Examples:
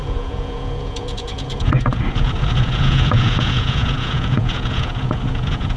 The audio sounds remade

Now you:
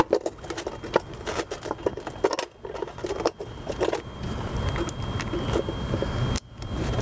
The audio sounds recorded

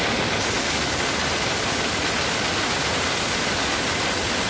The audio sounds recorded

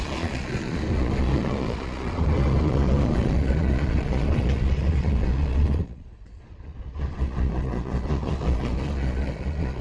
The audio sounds remade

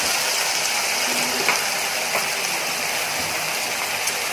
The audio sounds recorded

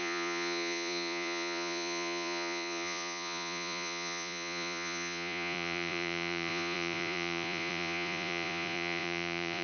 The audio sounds remade